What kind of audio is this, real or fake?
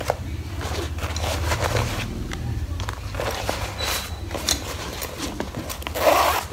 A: real